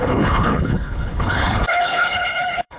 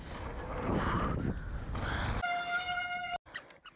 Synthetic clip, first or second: first